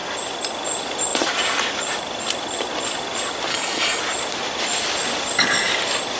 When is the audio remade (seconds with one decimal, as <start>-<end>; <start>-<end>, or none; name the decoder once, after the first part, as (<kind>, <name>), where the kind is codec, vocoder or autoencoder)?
3.5-4.0 (codec, DAC)